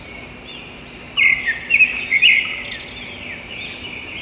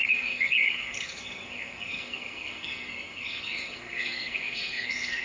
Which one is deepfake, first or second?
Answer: second